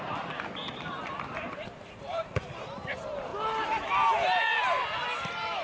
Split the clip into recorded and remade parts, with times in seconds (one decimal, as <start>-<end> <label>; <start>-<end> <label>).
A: 0.0-3.3 remade; 3.3-4.4 recorded; 4.4-5.6 remade